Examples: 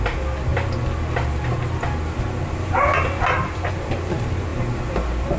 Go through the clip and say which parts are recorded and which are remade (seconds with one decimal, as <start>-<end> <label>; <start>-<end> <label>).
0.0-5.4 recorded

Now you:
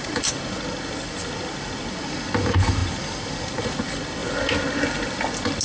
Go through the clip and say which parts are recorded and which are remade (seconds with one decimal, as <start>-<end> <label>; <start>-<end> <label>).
0.0-5.6 recorded

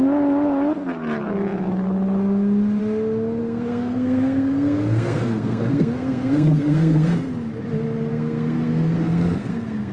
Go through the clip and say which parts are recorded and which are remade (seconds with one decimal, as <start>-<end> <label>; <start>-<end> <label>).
0.0-3.4 recorded; 3.4-7.3 remade; 7.3-8.1 recorded; 8.1-9.9 remade

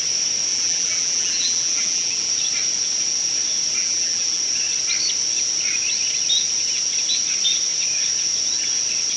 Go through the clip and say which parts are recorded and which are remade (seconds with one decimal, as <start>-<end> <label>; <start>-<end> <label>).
0.0-0.5 recorded; 0.5-2.3 remade; 2.3-3.8 recorded; 3.8-4.4 remade; 4.4-9.2 recorded